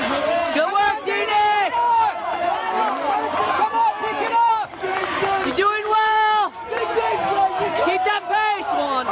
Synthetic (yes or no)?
yes